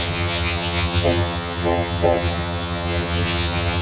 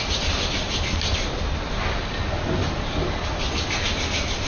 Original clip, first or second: second